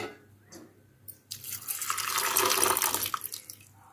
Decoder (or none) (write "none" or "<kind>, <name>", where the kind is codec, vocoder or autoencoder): vocoder, BigVGAN v2